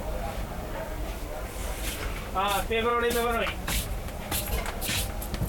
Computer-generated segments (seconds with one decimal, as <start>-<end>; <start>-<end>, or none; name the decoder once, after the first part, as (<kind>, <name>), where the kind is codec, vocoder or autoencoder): 2.9-4.6 (vocoder, BigVGAN v2)